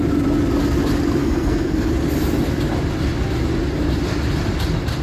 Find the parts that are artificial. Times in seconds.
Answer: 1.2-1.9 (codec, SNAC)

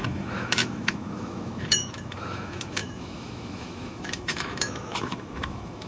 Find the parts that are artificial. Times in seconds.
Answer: 0.0-5.9 (autoencoder, DAC-VAE)

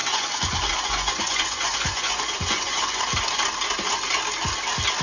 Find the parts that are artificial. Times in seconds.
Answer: 0.0-3.0 (vocoder, Vocos)

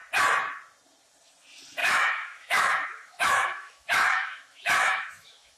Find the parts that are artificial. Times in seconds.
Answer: 1.8-5.6 (autoencoder, DAC-VAE)

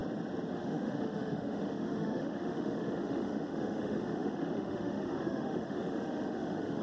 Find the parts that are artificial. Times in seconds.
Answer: 0.5-6.8 (autoencoder, DAC-VAE)

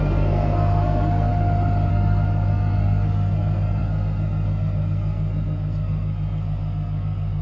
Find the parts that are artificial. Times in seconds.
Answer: 0.0-1.3 (codec, SNAC); 1.9-7.4